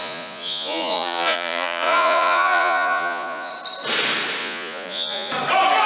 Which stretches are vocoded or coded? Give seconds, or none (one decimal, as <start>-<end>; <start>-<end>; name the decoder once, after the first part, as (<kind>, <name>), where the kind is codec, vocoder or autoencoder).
0.0-3.5 (vocoder, Vocos); 4.4-5.3